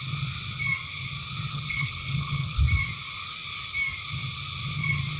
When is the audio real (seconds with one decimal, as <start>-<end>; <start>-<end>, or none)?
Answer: 0.0-1.5; 2.6-5.2